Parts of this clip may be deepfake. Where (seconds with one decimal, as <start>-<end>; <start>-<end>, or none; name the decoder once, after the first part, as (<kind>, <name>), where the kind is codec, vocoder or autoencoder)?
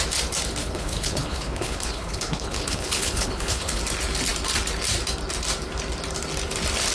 0.6-3.8 (codec, HILCodec)